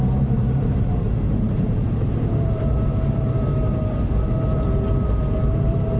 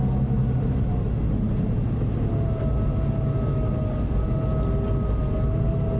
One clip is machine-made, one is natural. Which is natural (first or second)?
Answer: second